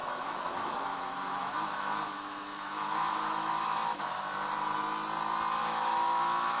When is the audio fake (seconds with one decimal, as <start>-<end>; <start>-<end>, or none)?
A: 0.0-4.0; 5.6-6.6